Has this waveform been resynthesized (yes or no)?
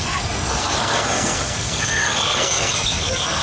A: yes